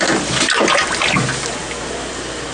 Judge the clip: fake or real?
real